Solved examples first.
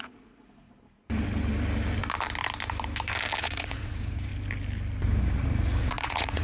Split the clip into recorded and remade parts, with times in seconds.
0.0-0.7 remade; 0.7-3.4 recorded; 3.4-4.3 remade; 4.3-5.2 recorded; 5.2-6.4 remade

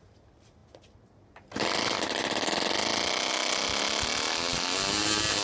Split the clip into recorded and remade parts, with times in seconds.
0.0-5.4 recorded

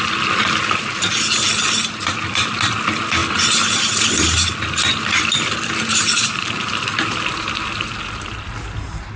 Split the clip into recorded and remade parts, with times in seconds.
0.0-3.2 recorded; 3.2-6.2 remade; 6.2-9.2 recorded

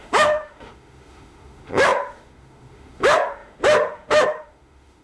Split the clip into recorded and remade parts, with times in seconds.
0.0-5.0 remade

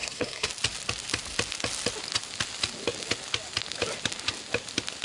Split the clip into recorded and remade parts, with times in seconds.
0.0-0.5 remade; 0.5-5.0 recorded

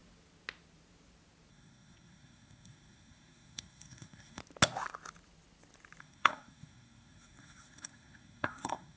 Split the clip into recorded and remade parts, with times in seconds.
0.0-1.5 recorded; 1.5-4.4 remade; 4.4-6.0 recorded; 6.0-9.0 remade

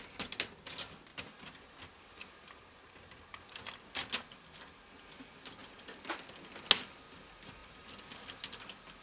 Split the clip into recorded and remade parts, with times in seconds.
0.0-1.1 recorded; 1.1-4.1 remade; 4.1-5.6 recorded; 5.6-6.1 remade; 6.1-7.6 recorded; 7.6-8.4 remade; 8.4-9.0 recorded

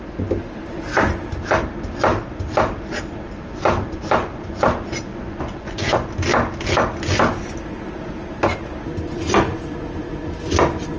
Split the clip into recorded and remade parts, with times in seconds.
0.0-5.1 recorded; 5.1-6.1 remade; 6.1-11.0 recorded